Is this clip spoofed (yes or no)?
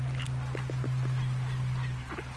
no